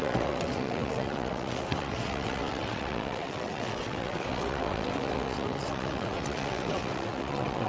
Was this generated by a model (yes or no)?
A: yes